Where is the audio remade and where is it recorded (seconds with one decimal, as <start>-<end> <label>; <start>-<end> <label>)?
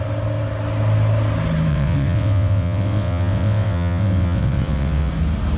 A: 0.0-1.7 recorded; 1.7-5.1 remade; 5.1-5.6 recorded